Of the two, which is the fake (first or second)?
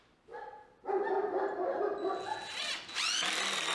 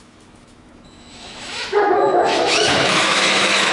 second